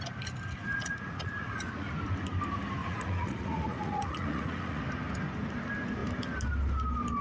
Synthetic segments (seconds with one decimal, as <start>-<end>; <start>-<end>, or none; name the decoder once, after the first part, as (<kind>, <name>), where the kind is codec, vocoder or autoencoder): 0.6-1.9 (vocoder, Vocos); 2.8-4.8